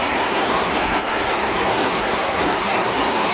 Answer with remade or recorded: remade